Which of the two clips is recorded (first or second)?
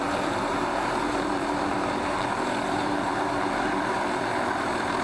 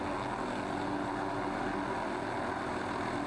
second